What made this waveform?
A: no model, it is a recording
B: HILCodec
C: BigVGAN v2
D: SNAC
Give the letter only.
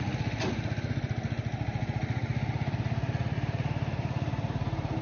A